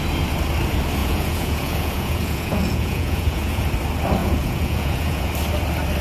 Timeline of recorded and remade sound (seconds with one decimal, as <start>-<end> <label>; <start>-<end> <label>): 0.0-1.0 recorded; 1.0-3.7 remade; 3.7-4.2 recorded; 4.2-5.3 remade; 5.3-6.0 recorded